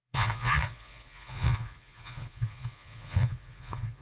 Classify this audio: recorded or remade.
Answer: remade